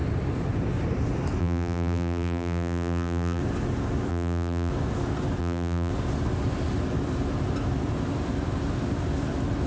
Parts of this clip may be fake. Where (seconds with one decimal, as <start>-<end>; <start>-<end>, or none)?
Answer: 1.4-3.4; 4.1-4.7; 5.4-5.9